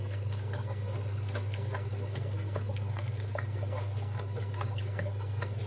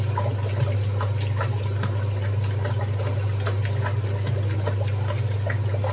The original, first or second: second